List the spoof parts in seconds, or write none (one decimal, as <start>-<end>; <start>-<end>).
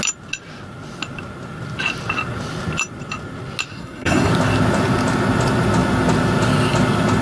3.7-4.3